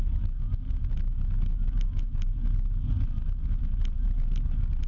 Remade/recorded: recorded